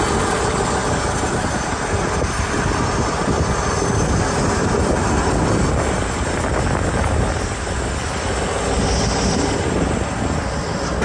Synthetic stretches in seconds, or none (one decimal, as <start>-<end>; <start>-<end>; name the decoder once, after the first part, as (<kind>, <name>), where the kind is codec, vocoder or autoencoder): none